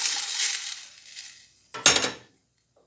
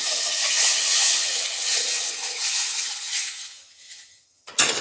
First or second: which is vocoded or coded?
second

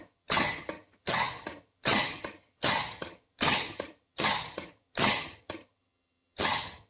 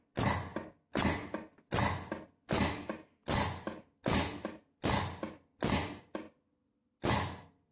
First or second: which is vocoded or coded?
first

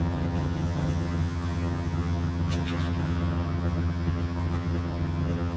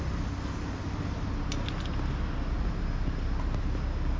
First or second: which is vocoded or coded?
first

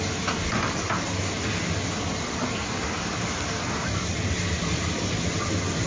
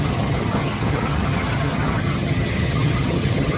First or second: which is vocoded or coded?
second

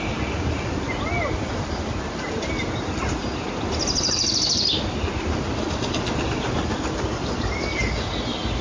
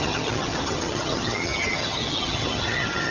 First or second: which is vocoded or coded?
second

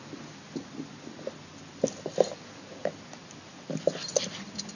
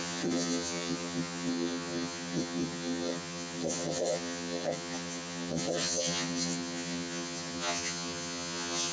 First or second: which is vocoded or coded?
second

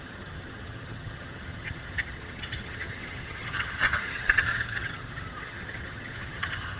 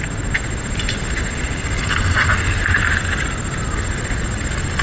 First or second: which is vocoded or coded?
first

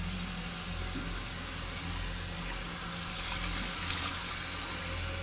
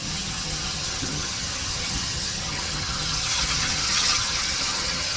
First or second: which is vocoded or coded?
second